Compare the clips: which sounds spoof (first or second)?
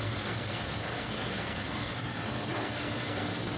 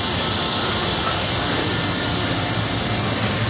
first